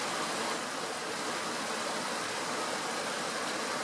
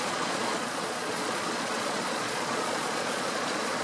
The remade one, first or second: second